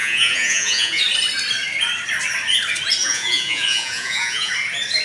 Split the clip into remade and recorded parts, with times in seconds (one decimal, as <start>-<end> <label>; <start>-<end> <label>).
0.0-1.0 remade; 1.0-3.0 recorded; 3.0-4.5 remade; 4.5-5.0 recorded

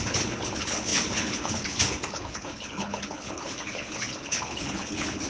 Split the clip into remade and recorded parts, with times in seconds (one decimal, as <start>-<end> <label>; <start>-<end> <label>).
0.0-5.3 remade

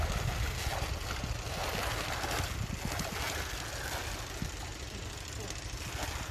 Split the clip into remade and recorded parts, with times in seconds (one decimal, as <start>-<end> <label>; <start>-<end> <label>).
0.0-6.3 recorded

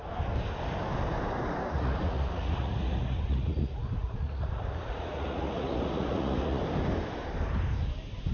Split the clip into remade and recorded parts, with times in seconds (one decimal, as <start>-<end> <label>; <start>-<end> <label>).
0.0-1.6 recorded; 1.6-6.6 remade; 6.6-8.3 recorded

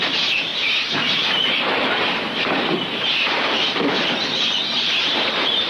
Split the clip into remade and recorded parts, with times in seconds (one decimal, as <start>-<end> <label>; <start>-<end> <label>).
0.0-5.7 remade

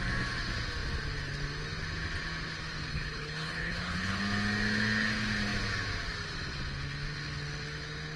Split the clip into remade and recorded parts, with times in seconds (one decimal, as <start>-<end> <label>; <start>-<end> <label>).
0.0-2.9 recorded; 2.9-4.2 remade; 4.2-8.2 recorded

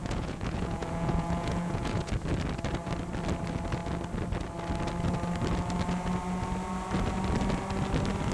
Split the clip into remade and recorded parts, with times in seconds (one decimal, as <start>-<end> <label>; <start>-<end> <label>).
0.0-2.1 remade; 2.1-8.3 recorded